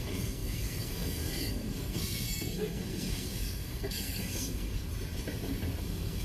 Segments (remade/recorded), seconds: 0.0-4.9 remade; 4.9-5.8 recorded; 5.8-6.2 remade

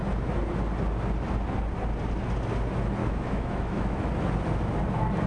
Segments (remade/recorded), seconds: 0.0-3.0 recorded; 3.0-4.1 remade; 4.1-5.3 recorded

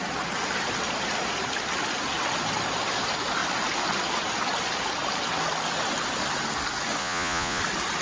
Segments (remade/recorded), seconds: 0.0-7.0 recorded; 7.0-7.6 remade; 7.6-8.0 recorded